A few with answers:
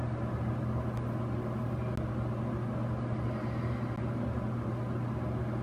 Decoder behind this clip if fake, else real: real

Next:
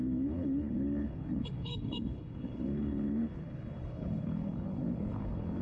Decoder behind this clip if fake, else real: fake, codec, HILCodec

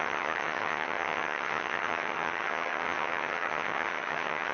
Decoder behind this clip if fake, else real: fake, vocoder, HiFi-GAN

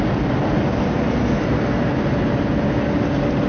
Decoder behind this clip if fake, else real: real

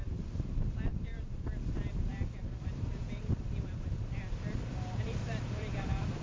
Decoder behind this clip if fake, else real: fake, vocoder, BigVGAN v2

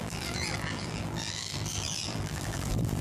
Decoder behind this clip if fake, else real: fake, vocoder, BigVGAN v2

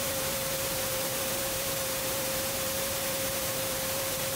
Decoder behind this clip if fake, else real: fake, vocoder, BigVGAN v2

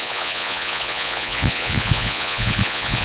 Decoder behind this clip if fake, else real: fake, vocoder, Vocos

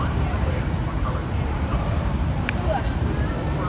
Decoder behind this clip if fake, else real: fake, vocoder, BigVGAN v2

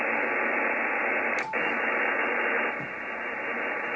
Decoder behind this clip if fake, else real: real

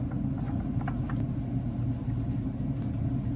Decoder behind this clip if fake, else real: real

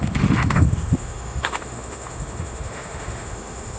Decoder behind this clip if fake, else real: fake, autoencoder, DAC-VAE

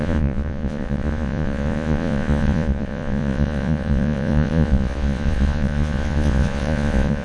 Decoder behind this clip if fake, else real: fake, vocoder, Vocos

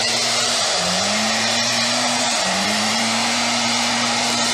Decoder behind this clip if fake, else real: fake, vocoder, BigVGAN v2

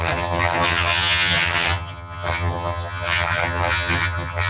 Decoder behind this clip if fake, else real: fake, vocoder, HiFi-GAN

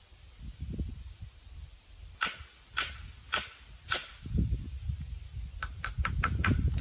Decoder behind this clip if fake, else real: real